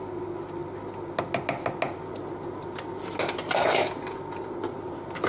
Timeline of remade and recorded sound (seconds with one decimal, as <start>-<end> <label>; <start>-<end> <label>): 0.0-5.3 recorded